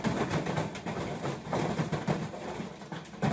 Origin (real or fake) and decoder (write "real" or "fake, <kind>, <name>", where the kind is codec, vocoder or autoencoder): real